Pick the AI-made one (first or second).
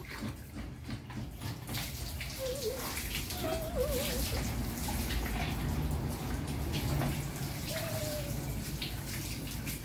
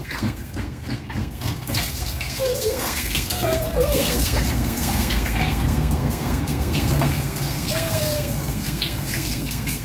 second